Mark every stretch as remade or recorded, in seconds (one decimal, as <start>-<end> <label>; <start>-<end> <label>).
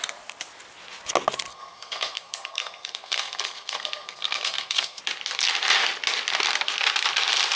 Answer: 0.0-1.5 recorded; 1.5-5.0 remade; 5.0-7.6 recorded